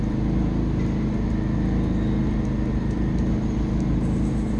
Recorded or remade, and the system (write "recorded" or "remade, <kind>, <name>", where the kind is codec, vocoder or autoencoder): recorded